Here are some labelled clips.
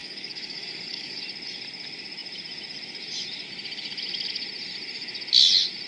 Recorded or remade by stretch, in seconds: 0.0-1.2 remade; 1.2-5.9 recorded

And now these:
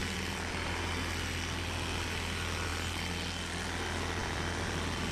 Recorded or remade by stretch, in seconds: 0.0-0.9 remade; 0.9-4.2 recorded; 4.2-5.1 remade

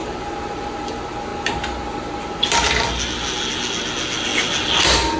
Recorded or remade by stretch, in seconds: 0.0-5.2 recorded

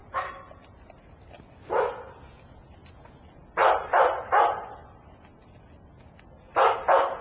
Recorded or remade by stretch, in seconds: 0.0-7.2 recorded

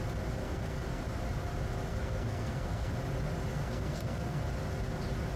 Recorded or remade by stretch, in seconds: 0.0-0.4 recorded; 0.4-1.0 remade; 1.0-1.9 recorded; 1.9-2.9 remade; 2.9-3.5 recorded; 3.5-4.4 remade; 4.4-5.4 recorded

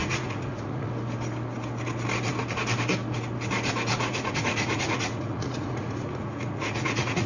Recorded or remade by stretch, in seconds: 0.0-0.9 remade; 0.9-4.1 recorded; 4.1-7.3 remade

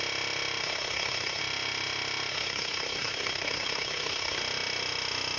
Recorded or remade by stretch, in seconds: 0.0-0.6 recorded; 0.6-1.4 remade; 1.4-2.3 recorded; 2.3-4.4 remade; 4.4-5.4 recorded